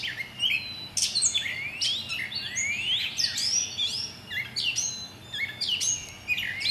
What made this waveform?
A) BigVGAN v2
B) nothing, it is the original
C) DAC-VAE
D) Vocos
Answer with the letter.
B